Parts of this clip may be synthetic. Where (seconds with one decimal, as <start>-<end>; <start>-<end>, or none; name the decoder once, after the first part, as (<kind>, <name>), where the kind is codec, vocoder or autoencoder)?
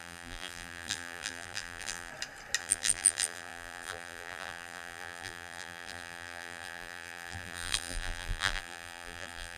0.0-2.1 (vocoder, BigVGAN v2); 2.6-9.6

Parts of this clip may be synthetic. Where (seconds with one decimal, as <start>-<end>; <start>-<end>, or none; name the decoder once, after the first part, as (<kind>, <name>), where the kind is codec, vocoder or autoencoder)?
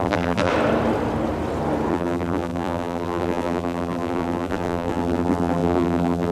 0.0-0.5 (vocoder, BigVGAN v2); 1.9-6.3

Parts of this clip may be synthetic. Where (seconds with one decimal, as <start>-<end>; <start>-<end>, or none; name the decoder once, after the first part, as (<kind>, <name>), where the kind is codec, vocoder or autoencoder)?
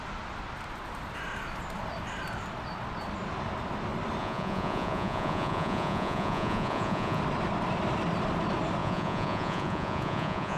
4.2-7.2 (vocoder, Vocos); 8.8-10.6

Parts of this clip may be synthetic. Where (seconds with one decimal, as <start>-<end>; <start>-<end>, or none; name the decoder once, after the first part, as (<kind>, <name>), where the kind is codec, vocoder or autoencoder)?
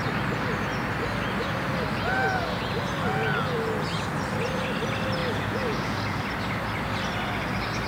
5.2-6.2 (vocoder, Vocos)